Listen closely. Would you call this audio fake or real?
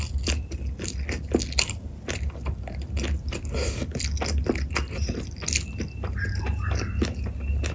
real